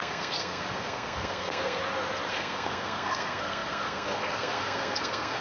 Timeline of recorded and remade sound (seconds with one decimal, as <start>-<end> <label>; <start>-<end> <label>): 0.0-1.8 remade; 1.8-2.3 recorded; 2.3-5.4 remade